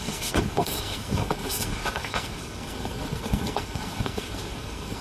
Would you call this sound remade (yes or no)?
yes